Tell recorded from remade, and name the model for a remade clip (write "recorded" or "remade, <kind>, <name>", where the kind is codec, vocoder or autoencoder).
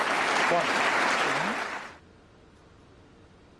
recorded